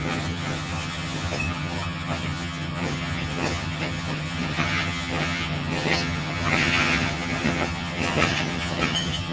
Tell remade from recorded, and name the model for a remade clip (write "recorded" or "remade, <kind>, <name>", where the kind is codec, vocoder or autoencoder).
remade, vocoder, HiFi-GAN